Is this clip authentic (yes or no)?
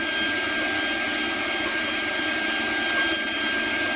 yes